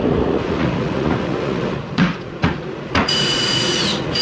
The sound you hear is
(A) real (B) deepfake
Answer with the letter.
B